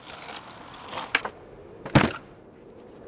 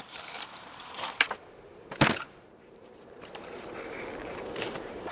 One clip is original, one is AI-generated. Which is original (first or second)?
first